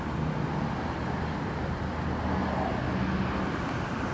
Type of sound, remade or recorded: recorded